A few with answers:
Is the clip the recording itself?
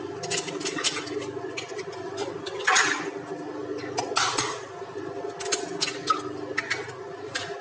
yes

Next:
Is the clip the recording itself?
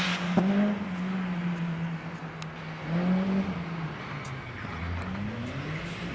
yes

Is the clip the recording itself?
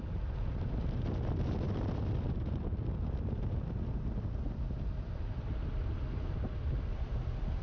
no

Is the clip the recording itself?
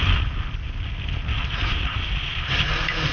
yes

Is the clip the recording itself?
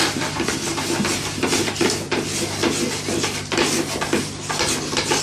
no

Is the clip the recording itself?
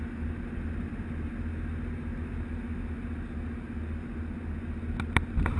yes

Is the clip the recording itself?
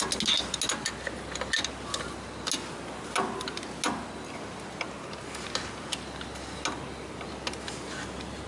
yes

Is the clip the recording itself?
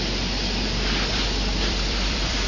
no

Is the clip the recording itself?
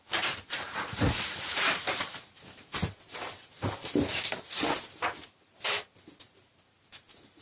no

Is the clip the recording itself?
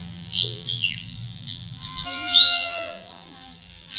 no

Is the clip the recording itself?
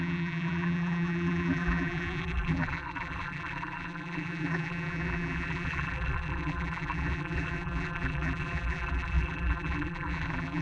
no